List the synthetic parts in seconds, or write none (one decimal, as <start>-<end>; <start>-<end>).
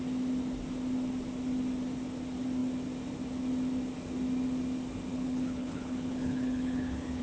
5.1-7.2